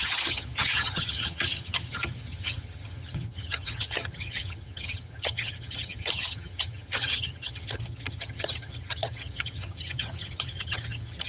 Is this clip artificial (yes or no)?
yes